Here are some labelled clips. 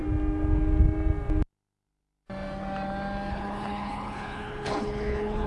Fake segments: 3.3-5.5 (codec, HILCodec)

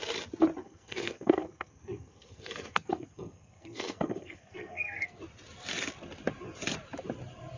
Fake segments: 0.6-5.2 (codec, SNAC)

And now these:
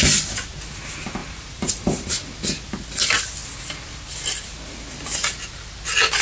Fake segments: 1.2-2.1 (vocoder, BigVGAN v2)

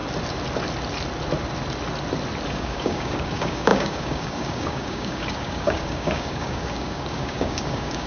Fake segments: 2.5-8.1 (codec, DAC)

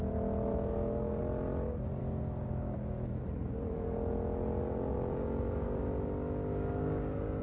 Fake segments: 0.5-1.2 (codec, DAC); 2.0-3.2; 4.6-7.4